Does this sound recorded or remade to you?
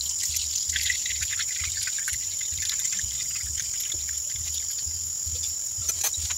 remade